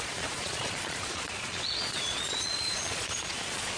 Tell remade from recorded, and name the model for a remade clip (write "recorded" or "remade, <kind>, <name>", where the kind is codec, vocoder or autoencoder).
remade, vocoder, Vocos